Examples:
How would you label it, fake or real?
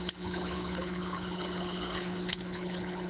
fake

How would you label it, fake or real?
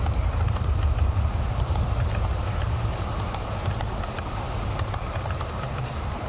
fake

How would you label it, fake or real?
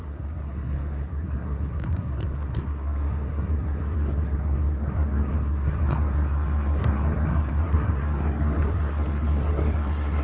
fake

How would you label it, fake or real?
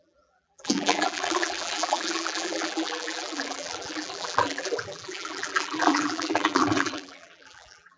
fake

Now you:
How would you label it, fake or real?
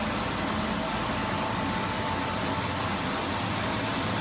real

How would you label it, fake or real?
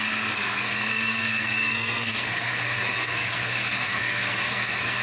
fake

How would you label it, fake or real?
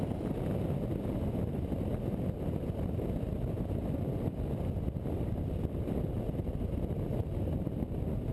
real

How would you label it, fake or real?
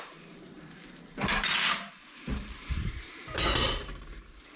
fake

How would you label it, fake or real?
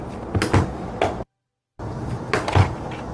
real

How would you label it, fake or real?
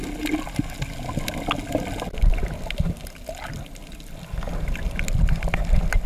real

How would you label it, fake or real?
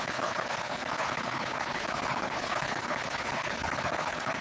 fake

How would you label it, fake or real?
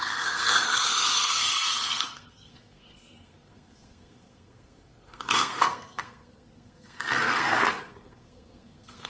fake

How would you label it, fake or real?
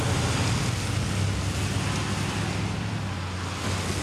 real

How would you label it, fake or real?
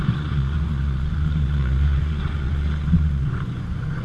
fake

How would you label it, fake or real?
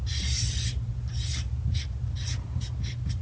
real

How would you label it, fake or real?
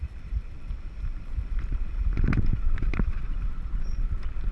fake